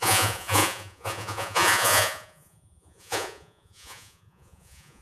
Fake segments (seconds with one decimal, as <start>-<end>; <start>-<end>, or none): 0.0-5.0